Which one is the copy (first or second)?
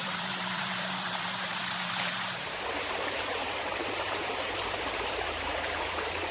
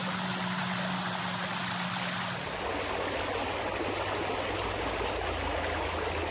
first